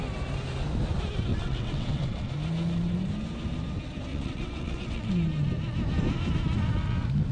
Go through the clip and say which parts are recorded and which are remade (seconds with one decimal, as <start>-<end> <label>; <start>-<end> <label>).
0.0-1.3 recorded; 1.3-2.3 remade; 2.3-4.1 recorded; 4.1-5.1 remade; 5.1-7.3 recorded